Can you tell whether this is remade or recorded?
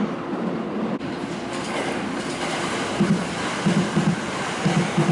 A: recorded